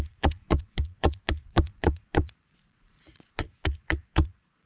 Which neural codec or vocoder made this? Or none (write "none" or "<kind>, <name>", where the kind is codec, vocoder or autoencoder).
vocoder, Vocos